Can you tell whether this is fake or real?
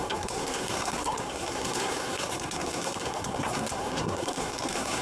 fake